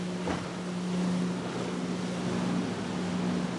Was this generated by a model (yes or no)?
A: no